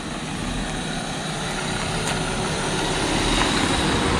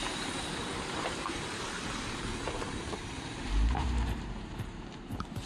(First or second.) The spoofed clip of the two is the second